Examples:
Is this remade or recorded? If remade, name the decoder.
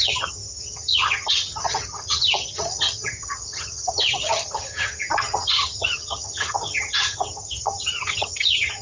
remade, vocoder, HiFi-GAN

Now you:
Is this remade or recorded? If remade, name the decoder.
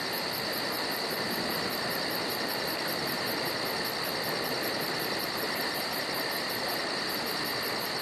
recorded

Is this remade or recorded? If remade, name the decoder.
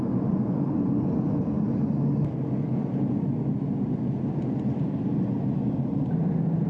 recorded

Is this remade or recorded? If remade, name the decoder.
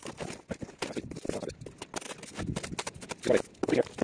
recorded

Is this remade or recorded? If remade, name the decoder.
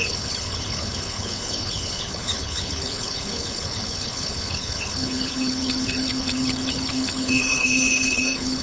remade, codec, HILCodec